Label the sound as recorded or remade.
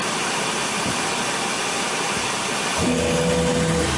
recorded